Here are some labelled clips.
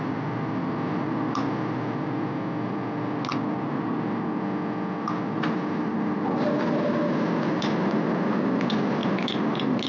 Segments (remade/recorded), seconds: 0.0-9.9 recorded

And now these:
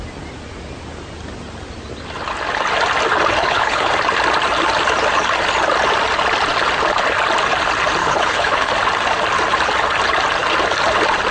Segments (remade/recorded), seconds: 0.0-3.4 recorded; 3.4-3.9 remade; 3.9-8.0 recorded; 8.0-8.7 remade; 8.7-11.3 recorded